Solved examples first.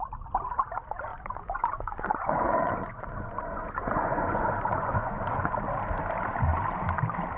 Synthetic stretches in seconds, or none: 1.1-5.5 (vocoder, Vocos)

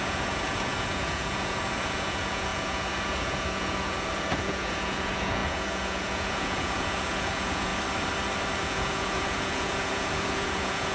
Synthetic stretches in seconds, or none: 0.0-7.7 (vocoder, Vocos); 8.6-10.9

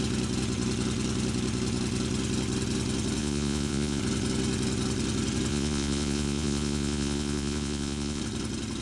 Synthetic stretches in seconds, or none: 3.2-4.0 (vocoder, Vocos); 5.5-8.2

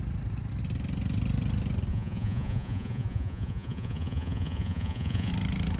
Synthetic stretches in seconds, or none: 1.9-5.3 (vocoder, Vocos)

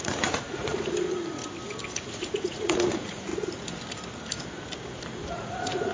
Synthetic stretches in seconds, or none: 0.0-1.4 (vocoder, Vocos); 2.1-3.3; 5.3-5.9

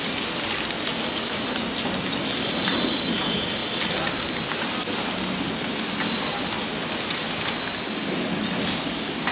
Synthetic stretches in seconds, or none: none

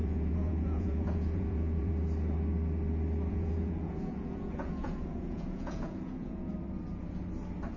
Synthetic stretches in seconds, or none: 0.0-1.9 (vocoder, Vocos); 3.3-6.5

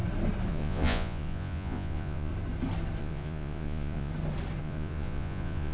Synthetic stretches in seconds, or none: 0.5-2.3 (vocoder, Vocos); 3.0-4.1; 4.6-5.7